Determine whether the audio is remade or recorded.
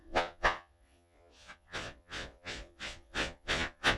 remade